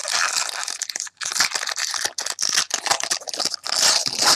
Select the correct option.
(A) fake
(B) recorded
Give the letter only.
B